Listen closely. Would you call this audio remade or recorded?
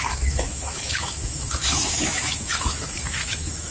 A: remade